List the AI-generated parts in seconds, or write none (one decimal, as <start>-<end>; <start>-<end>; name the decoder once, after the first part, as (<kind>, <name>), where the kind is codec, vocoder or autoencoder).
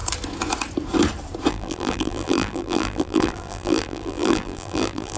1.5-5.2 (vocoder, BigVGAN v2)